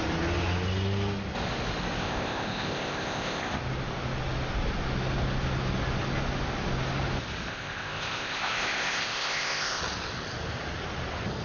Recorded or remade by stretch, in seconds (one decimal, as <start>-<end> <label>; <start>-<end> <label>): 0.0-2.0 recorded; 2.0-3.6 remade; 3.6-7.5 recorded; 7.5-9.8 remade; 9.8-11.4 recorded